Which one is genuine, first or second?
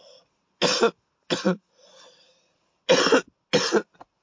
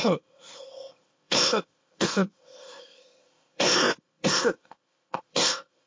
first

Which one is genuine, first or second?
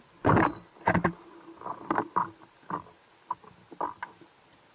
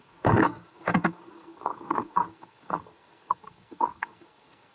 first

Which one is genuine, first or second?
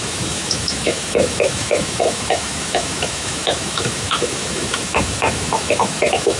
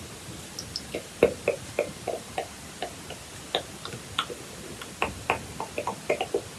second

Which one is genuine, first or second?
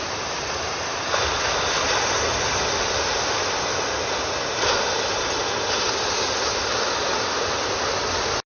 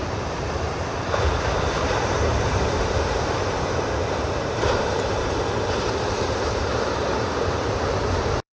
first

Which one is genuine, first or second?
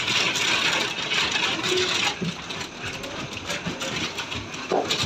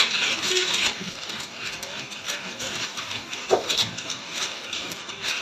first